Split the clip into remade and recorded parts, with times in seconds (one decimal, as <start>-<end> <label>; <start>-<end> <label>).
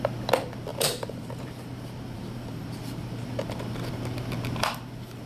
0.0-0.7 recorded; 0.7-3.9 remade; 3.9-5.3 recorded